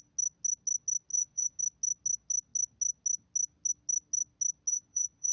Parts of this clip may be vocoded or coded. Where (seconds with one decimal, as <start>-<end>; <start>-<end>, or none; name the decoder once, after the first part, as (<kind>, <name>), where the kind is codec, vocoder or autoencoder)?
1.1-1.6 (vocoder, Vocos); 4.7-5.3